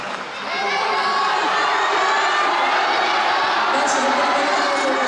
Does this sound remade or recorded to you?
recorded